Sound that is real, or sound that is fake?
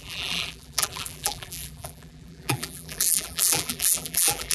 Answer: fake